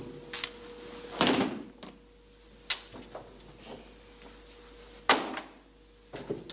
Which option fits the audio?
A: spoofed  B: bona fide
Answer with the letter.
B